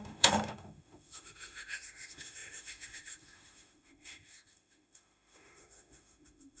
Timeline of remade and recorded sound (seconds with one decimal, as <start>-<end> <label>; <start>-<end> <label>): 0.0-6.6 remade